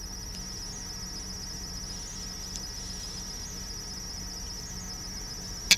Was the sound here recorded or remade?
recorded